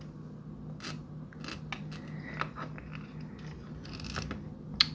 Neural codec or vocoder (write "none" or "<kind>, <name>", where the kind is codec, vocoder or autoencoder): none